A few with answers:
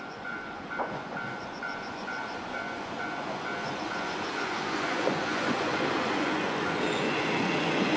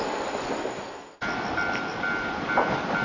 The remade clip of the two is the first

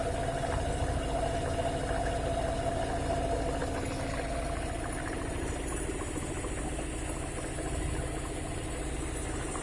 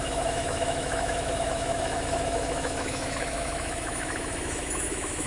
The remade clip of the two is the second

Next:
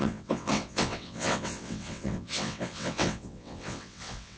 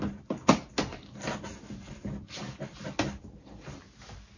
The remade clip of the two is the first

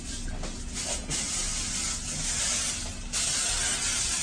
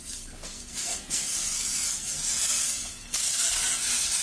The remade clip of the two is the second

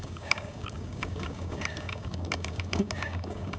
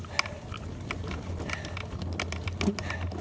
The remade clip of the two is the first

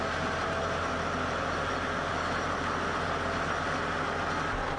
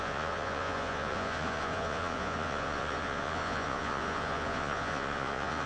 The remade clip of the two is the second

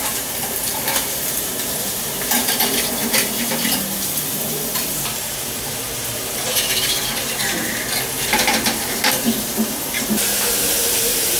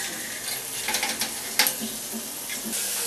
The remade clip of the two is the first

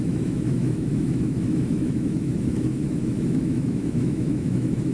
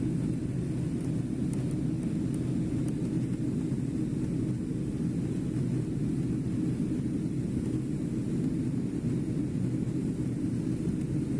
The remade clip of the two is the first